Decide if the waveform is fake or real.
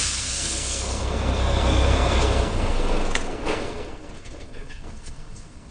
fake